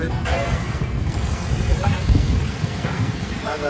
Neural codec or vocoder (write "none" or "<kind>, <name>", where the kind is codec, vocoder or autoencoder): codec, SNAC